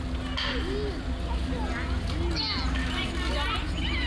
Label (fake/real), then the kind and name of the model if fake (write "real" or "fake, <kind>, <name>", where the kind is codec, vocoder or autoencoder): real